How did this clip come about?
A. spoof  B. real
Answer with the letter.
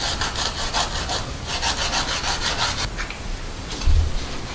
B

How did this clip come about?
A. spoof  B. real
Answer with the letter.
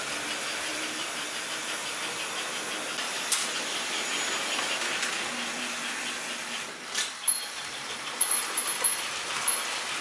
B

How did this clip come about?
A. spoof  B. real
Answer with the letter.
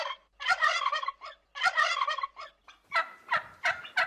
B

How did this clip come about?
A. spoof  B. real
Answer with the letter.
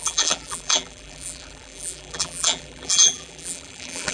A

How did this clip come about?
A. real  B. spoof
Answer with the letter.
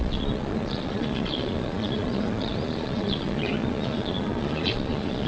B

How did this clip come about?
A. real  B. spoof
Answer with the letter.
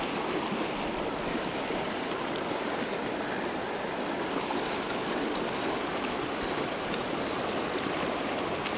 A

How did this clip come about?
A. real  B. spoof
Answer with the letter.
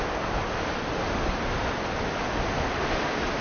A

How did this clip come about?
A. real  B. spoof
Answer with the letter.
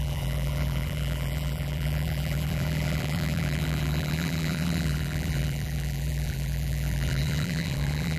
B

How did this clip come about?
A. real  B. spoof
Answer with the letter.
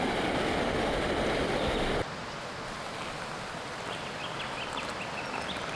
A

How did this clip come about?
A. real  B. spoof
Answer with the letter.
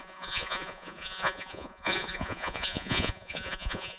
B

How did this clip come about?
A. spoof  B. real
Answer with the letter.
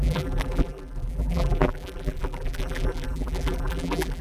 A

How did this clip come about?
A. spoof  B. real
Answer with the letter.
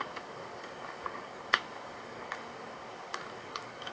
A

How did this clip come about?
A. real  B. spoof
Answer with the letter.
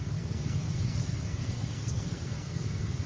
B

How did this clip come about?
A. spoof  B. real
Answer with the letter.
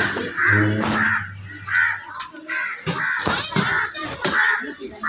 B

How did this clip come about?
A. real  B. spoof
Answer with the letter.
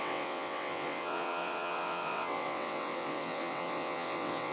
B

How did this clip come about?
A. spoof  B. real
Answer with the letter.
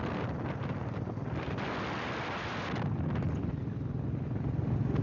B